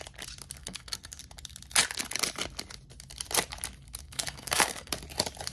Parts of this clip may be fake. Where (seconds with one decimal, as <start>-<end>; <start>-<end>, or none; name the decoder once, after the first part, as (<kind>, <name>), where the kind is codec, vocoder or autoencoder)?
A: 0.6-1.2 (codec, SNAC); 4.0-4.9